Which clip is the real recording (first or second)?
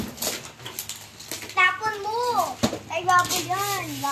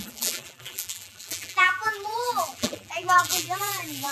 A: first